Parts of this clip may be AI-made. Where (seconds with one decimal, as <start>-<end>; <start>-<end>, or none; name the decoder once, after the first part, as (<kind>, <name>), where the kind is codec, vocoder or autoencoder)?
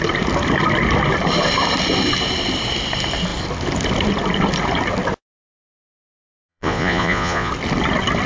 6.5-7.5 (vocoder, Vocos)